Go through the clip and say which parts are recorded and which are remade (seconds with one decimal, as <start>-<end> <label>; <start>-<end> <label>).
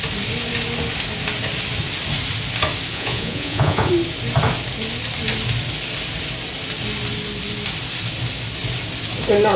0.0-2.9 recorded; 2.9-3.9 remade; 3.9-9.6 recorded